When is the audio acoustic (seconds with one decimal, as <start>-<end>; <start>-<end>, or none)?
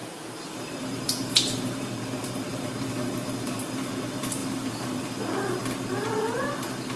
1.8-2.5; 3.7-4.4; 5.0-7.0